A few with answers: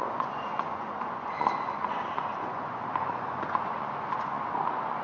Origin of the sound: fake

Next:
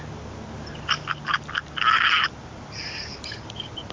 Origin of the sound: real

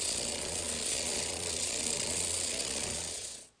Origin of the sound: fake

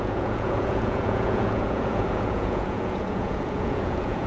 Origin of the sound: fake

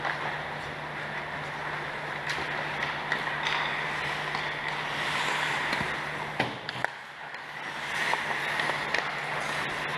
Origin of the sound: real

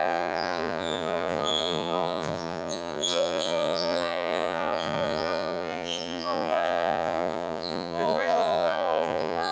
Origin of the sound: fake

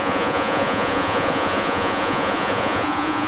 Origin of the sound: fake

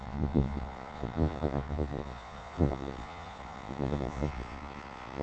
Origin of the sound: fake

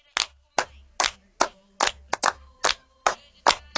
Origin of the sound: real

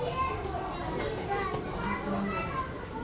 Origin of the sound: real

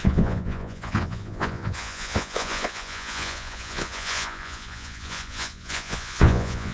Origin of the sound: fake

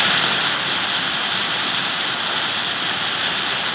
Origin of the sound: real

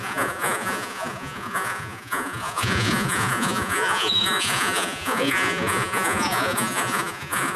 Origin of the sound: fake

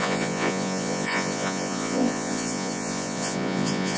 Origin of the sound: fake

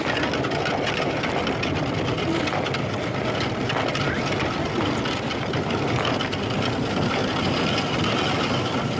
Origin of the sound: real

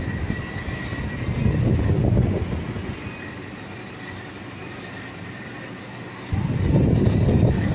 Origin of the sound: real